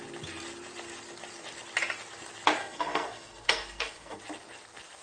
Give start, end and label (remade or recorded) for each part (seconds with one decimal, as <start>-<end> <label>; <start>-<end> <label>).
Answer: 0.0-2.6 recorded; 2.6-4.2 remade; 4.2-5.0 recorded